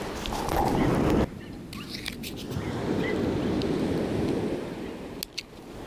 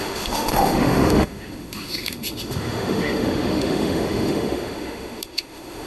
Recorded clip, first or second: first